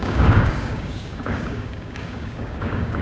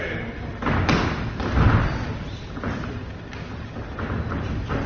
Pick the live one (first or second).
second